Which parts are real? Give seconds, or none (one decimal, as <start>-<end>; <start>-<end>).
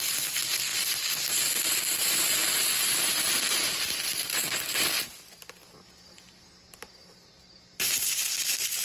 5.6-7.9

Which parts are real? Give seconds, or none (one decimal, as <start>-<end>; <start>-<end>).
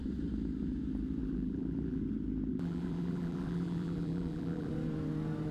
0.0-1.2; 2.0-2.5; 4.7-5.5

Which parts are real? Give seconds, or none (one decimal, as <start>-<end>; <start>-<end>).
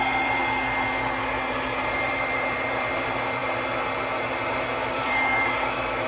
0.4-1.9; 3.4-4.9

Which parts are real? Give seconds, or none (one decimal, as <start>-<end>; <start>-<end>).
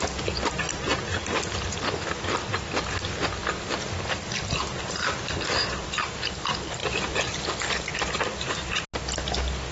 3.4-4.1; 6.8-9.7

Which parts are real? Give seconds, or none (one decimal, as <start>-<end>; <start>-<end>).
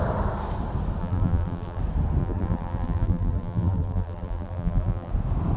0.0-1.0; 1.8-2.2; 5.1-5.6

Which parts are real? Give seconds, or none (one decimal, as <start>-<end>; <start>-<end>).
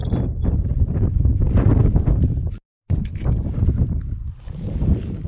0.0-1.0; 1.7-4.7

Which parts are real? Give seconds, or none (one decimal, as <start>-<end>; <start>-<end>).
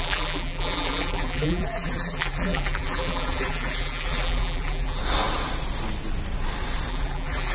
5.0-6.9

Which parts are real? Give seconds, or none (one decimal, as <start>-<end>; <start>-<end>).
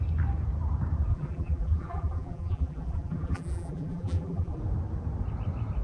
0.0-1.1; 4.6-5.8